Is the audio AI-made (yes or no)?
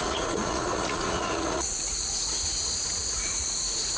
yes